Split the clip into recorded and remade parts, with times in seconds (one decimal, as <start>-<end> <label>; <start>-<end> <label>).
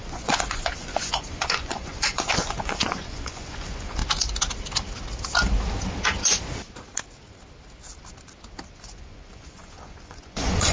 0.0-4.0 remade; 4.0-8.8 recorded; 8.8-10.7 remade